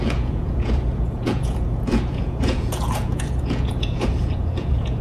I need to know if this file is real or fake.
fake